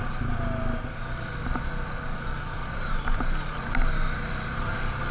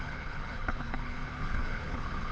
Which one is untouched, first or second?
first